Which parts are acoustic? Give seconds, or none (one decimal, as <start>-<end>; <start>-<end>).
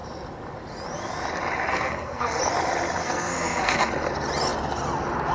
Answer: 0.0-1.7; 2.4-3.0; 3.9-5.3